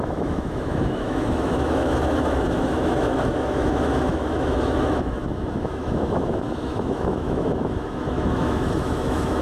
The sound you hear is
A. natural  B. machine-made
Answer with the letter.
B